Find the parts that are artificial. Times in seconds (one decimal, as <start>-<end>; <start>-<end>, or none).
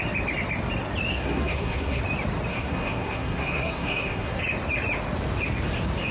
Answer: 1.1-2.0; 2.5-4.4